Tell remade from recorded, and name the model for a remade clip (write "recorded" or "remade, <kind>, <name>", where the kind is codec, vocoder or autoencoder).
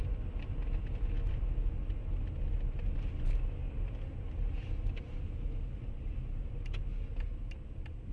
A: recorded